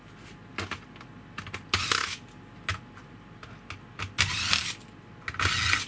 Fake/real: real